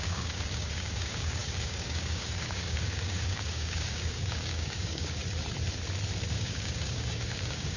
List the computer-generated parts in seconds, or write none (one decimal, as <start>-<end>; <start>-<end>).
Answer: 0.0-5.2; 6.3-7.8